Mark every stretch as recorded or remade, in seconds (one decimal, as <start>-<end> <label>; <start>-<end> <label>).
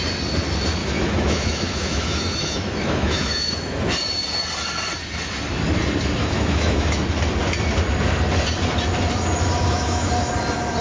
0.0-0.8 recorded; 0.8-3.8 remade; 3.8-6.2 recorded; 6.2-7.0 remade; 7.0-9.6 recorded; 9.6-10.1 remade; 10.1-10.8 recorded